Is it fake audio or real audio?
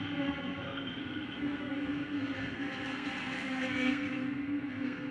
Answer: fake